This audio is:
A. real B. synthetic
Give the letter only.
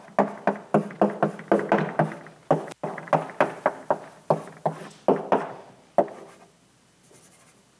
A